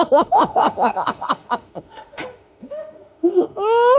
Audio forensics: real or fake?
fake